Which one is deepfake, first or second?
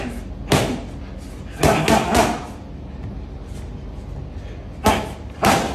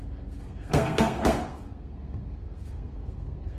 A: second